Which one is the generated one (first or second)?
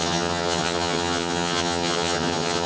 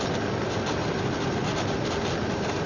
first